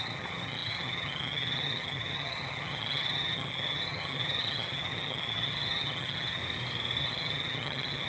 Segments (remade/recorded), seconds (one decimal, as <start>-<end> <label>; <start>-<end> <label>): 0.0-6.4 remade; 6.4-7.0 recorded; 7.0-8.1 remade